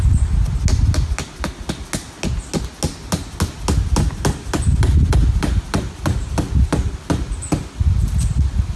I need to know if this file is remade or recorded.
recorded